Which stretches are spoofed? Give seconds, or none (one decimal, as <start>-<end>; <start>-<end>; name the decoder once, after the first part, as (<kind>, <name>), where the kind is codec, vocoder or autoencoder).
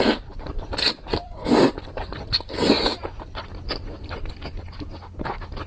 1.1-4.3 (vocoder, BigVGAN v2)